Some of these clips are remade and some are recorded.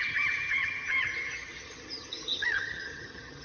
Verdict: remade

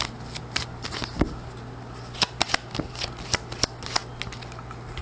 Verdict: recorded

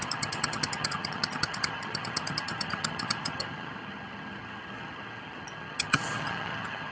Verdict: remade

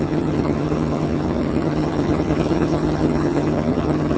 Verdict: remade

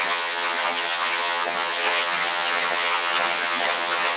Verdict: remade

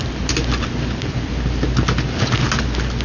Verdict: recorded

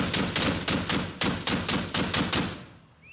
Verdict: recorded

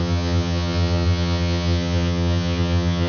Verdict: remade